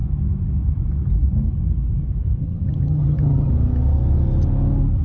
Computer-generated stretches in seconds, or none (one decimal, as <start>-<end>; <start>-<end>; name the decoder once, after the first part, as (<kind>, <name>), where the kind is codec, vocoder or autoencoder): 2.4-3.5 (vocoder, HiFi-GAN)